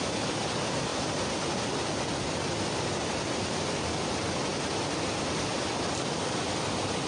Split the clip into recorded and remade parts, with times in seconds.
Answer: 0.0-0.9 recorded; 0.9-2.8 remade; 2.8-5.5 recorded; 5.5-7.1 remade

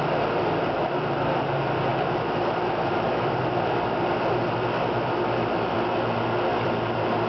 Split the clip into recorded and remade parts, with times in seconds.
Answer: 0.0-7.3 remade

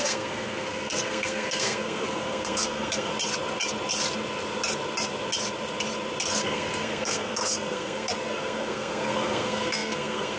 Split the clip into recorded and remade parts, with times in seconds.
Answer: 0.0-3.1 remade; 3.1-6.4 recorded; 6.4-10.4 remade

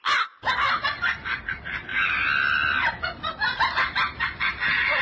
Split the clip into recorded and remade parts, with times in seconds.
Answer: 0.0-5.0 recorded

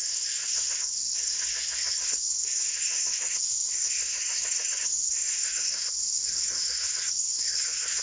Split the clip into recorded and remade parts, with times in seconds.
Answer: 0.0-8.0 remade

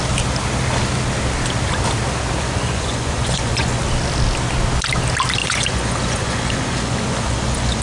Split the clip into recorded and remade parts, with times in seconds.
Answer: 0.0-2.4 recorded; 2.4-3.8 remade; 3.8-5.4 recorded; 5.4-7.8 remade

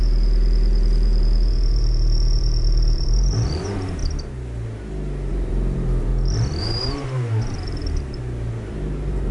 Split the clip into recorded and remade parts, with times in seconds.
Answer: 0.0-4.0 remade; 4.0-5.3 recorded; 5.3-6.1 remade; 6.1-6.6 recorded; 6.6-9.3 remade

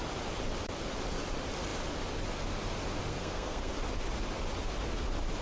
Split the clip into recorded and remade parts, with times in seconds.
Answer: 0.0-3.1 recorded; 3.1-3.7 remade; 3.7-5.4 recorded